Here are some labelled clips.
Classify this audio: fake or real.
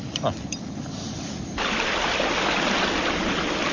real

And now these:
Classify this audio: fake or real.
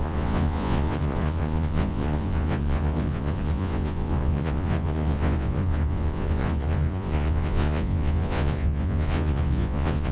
fake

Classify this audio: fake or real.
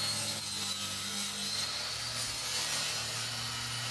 real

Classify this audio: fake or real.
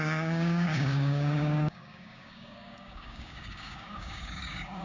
fake